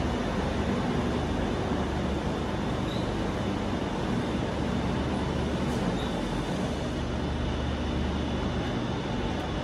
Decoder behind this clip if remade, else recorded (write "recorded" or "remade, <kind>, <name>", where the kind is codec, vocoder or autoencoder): recorded